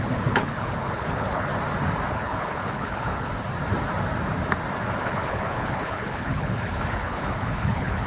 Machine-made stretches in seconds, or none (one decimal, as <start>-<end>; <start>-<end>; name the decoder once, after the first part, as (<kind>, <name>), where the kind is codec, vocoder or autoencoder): 0.0-1.5 (codec, HILCodec); 2.1-3.3; 5.0-8.1